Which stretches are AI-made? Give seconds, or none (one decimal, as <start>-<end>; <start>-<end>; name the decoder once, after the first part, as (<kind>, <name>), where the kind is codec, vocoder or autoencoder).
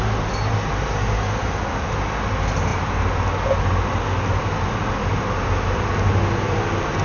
none